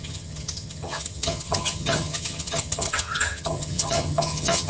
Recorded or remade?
remade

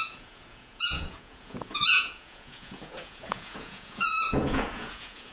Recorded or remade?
remade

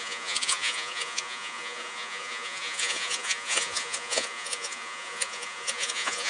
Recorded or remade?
remade